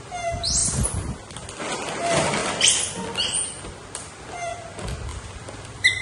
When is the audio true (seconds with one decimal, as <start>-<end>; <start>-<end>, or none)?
0.0-0.6; 1.6-5.1